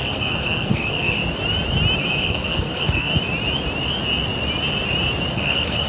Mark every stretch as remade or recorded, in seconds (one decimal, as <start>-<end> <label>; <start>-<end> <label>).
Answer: 0.0-1.2 remade; 1.2-2.2 recorded; 2.2-3.1 remade; 3.1-5.3 recorded; 5.3-5.9 remade